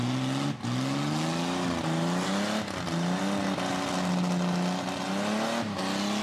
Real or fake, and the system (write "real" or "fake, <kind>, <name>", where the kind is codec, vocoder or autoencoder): real